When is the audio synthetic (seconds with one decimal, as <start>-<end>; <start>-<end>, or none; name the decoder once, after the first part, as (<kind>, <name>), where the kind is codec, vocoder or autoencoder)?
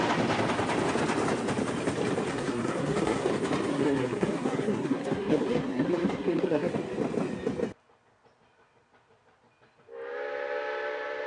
2.3-3.3 (codec, SNAC); 3.7-6.7